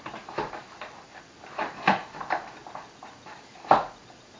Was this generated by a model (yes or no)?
yes